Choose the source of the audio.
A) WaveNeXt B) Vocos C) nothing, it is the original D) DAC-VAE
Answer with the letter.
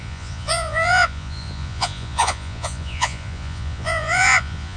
B